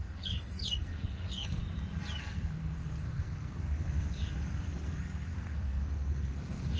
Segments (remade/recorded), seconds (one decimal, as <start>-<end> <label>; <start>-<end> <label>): 0.0-1.6 remade; 1.6-2.2 recorded; 2.2-6.8 remade